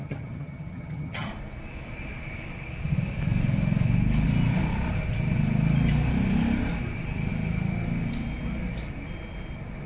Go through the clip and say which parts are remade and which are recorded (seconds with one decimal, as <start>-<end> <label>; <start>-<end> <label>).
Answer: 0.0-1.3 remade; 1.3-9.9 recorded